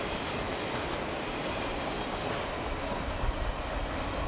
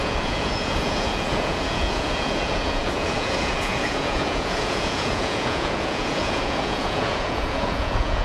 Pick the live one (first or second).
first